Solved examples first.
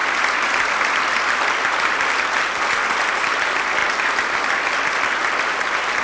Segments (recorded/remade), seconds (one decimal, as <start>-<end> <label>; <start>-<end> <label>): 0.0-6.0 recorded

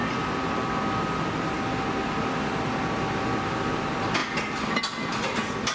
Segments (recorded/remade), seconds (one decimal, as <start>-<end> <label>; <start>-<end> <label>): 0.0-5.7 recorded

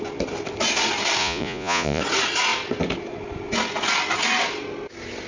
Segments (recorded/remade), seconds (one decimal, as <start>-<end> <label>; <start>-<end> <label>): 0.0-1.2 recorded; 1.2-2.0 remade; 2.0-5.3 recorded

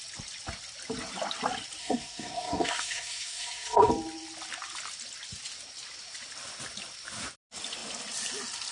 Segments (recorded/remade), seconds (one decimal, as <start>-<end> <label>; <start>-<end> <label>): 0.0-1.8 recorded; 1.8-3.9 remade; 3.9-8.7 recorded

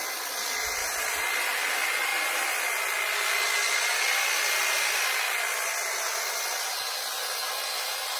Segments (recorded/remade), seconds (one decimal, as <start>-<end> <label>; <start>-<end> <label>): 0.0-8.2 recorded

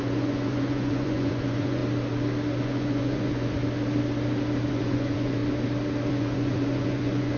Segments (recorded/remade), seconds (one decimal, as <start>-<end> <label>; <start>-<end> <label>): 0.0-1.8 remade; 1.8-2.6 recorded; 2.6-3.6 remade; 3.6-4.7 recorded; 4.7-5.4 remade; 5.4-6.1 recorded; 6.1-7.4 remade

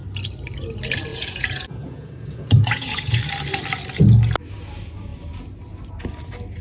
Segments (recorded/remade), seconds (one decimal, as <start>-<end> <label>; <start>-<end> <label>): 0.0-1.1 recorded; 1.1-3.2 remade; 3.2-6.6 recorded